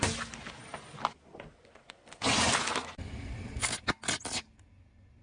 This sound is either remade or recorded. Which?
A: recorded